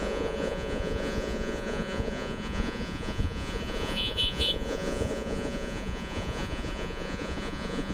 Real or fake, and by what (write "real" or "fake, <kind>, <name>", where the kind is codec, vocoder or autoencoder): fake, vocoder, Vocos